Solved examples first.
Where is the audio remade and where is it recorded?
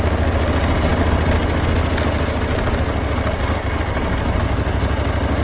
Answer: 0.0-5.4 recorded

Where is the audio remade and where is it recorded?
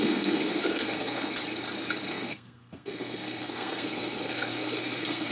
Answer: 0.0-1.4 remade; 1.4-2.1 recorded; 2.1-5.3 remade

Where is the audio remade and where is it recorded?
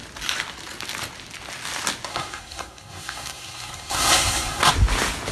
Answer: 0.0-2.1 recorded; 2.1-4.7 remade; 4.7-5.3 recorded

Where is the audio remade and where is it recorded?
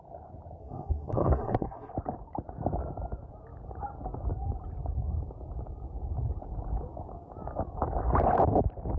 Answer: 0.0-0.6 recorded; 0.6-1.9 remade; 1.9-9.0 recorded